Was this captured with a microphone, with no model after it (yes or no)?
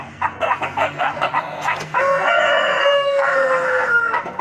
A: no